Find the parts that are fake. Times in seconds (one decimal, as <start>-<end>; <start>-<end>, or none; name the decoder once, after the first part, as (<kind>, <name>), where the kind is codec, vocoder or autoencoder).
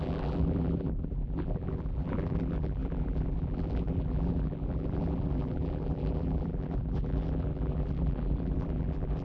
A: 0.0-9.2 (vocoder, BigVGAN v2)